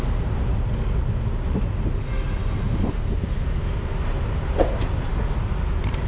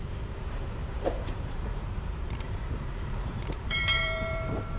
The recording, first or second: first